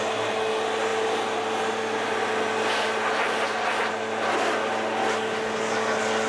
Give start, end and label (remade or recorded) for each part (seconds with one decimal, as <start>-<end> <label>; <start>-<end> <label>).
0.0-6.3 recorded